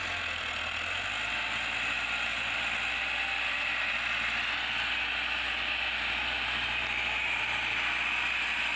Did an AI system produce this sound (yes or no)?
no